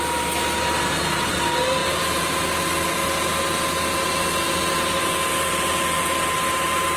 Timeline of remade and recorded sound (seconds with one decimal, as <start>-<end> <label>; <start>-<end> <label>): 0.0-7.0 recorded